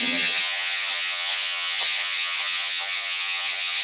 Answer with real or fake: fake